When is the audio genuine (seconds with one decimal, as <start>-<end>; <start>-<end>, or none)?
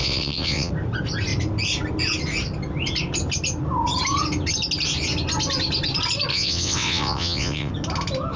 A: 0.7-6.3; 7.7-8.4